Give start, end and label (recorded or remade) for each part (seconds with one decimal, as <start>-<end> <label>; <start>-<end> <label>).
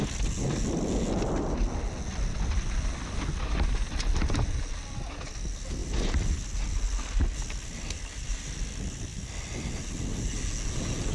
0.0-11.1 recorded